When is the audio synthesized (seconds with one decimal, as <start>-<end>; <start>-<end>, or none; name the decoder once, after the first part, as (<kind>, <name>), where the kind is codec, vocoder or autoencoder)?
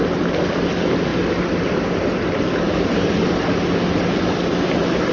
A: none